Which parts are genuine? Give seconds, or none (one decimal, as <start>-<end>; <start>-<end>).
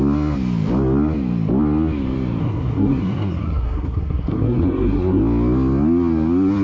0.0-2.4; 5.2-6.6